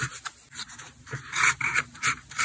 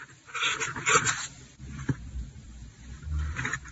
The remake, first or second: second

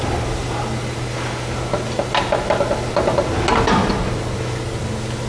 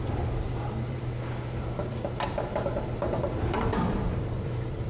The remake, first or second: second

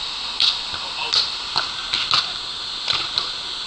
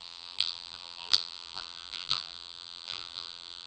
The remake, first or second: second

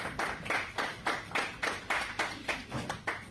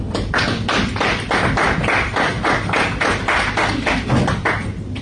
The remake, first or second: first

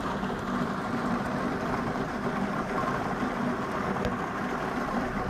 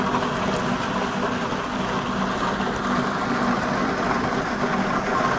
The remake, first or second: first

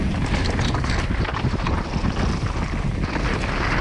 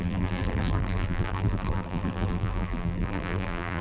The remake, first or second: second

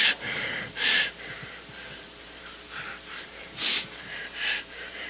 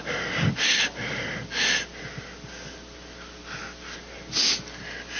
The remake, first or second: first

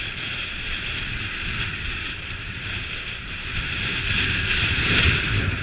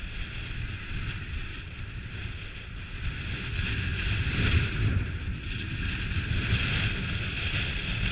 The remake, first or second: first